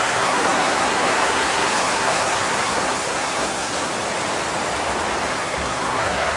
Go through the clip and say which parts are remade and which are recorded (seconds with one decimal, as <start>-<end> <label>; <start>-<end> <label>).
0.0-3.9 remade; 3.9-5.3 recorded; 5.3-6.4 remade

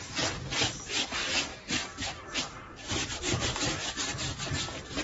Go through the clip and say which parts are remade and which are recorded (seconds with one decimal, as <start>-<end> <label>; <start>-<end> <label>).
0.0-1.5 recorded; 1.5-3.9 remade; 3.9-5.0 recorded

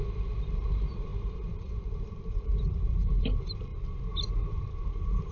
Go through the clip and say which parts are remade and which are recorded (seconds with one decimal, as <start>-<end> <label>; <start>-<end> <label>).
0.0-3.7 remade; 3.7-4.5 recorded; 4.5-5.3 remade

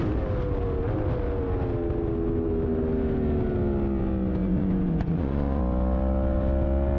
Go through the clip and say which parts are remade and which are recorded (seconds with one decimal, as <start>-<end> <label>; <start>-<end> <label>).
0.0-4.4 recorded; 4.4-5.6 remade; 5.6-7.0 recorded

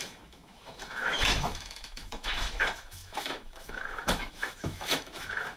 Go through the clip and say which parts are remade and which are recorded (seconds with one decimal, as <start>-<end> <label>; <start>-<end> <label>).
0.0-5.6 remade

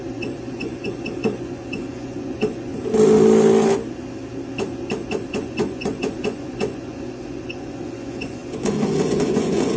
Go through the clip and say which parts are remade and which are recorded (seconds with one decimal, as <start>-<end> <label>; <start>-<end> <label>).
0.0-2.7 remade; 2.7-5.3 recorded; 5.3-9.8 remade